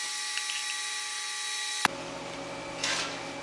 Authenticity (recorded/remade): recorded